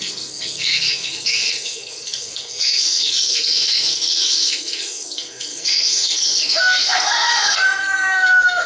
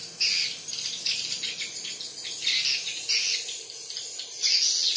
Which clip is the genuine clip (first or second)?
second